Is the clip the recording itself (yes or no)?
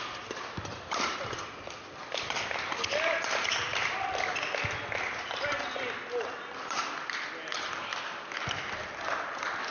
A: yes